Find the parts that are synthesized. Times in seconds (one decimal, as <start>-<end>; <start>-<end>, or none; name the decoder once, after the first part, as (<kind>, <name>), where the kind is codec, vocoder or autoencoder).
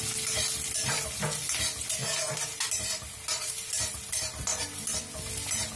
none